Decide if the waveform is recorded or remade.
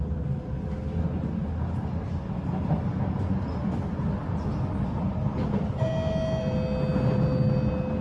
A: recorded